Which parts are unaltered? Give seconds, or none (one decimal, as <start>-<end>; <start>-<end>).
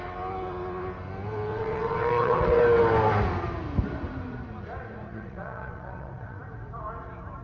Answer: 0.0-1.5; 2.6-5.1; 6.4-7.4